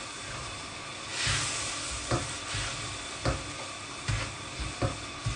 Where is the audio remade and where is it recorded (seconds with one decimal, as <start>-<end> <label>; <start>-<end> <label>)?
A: 0.0-5.4 recorded